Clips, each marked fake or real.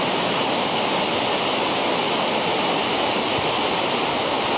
real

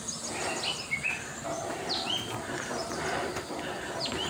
real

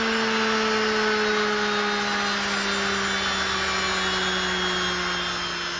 real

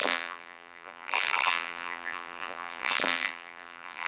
fake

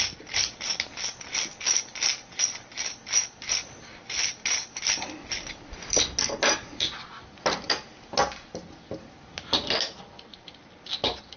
real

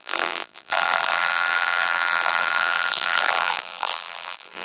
fake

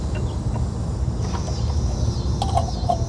real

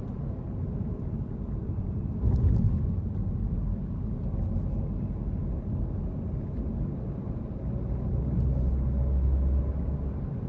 real